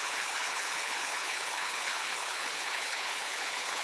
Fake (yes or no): yes